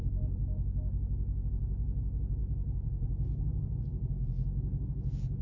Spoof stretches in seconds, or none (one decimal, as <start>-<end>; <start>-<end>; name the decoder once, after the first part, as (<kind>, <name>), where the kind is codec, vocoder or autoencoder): 0.0-0.4 (vocoder, Vocos); 1.5-5.4